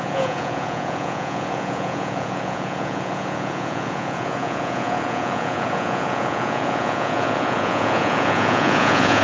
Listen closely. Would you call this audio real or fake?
fake